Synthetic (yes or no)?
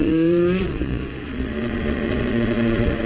yes